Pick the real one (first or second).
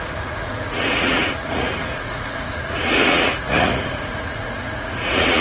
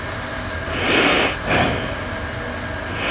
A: second